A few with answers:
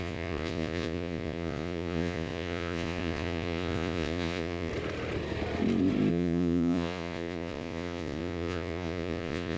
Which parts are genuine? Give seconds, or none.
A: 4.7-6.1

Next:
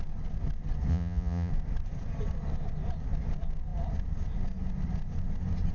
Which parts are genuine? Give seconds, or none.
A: 0.0-0.9; 1.5-5.7

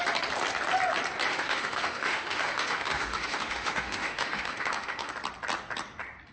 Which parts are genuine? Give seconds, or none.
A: 0.0-1.3; 5.1-6.3

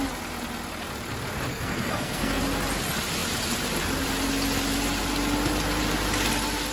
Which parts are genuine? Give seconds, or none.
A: 0.0-1.5; 2.4-6.7

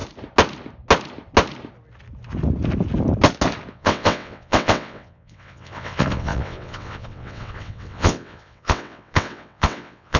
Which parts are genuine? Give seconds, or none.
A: 0.0-3.7